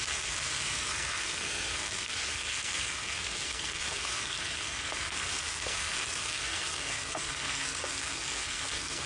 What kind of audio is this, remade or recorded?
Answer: remade